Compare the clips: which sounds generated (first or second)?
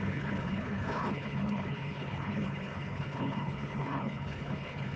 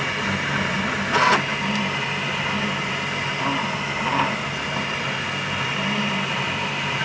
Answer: first